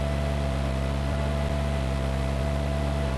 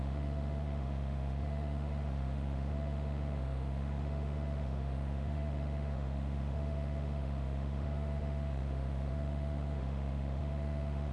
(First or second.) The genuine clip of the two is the first